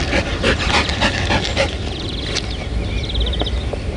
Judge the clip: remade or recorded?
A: recorded